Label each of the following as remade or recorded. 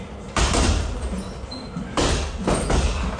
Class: recorded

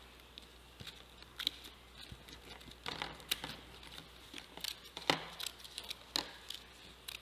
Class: recorded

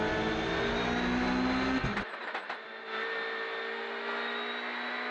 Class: recorded